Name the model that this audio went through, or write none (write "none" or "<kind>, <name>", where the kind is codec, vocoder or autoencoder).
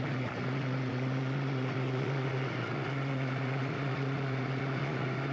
vocoder, Vocos